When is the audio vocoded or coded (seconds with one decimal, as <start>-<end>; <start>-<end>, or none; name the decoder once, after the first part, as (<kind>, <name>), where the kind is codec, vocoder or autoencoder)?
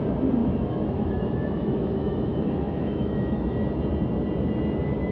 0.4-3.5 (autoencoder, DAC-VAE)